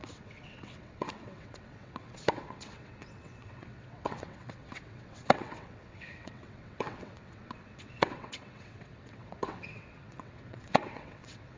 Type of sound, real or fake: fake